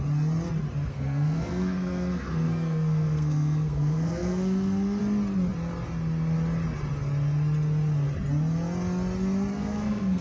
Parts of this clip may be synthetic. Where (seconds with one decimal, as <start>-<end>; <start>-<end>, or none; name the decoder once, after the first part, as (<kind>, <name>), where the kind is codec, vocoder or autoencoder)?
0.9-5.0 (codec, SNAC); 9.5-10.2